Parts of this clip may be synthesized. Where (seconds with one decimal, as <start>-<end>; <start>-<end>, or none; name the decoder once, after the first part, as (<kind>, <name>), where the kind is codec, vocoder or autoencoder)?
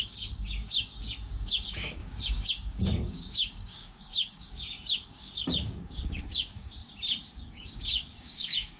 0.0-6.8 (codec, DAC); 7.3-8.8